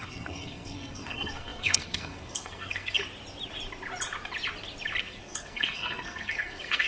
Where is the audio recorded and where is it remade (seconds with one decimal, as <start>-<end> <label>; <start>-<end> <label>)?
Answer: 0.0-3.0 remade; 3.0-5.0 recorded; 5.0-6.9 remade